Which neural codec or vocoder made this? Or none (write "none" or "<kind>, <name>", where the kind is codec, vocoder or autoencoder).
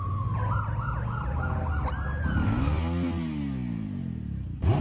none